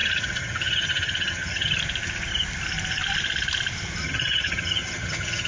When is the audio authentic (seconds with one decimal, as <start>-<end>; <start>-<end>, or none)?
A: 1.8-4.0